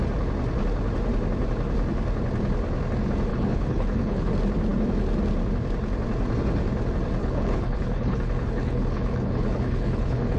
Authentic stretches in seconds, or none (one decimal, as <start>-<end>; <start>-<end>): 0.0-3.3; 4.3-7.2